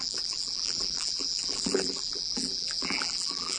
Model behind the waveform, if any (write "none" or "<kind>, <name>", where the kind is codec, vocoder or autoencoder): vocoder, BigVGAN v2